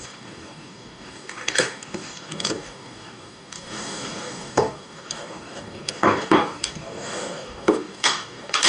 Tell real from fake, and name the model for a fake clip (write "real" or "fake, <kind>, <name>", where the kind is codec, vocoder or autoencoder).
fake, codec, DAC